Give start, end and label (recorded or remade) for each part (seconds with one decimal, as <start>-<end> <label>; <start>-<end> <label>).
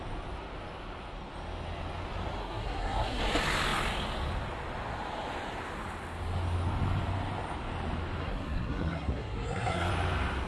0.0-2.4 recorded; 2.4-3.2 remade; 3.2-8.2 recorded; 8.2-9.9 remade; 9.9-10.5 recorded